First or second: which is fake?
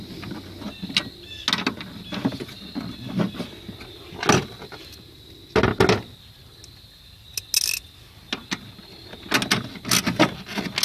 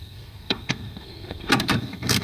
second